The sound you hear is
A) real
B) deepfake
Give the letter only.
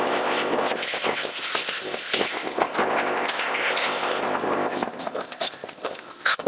B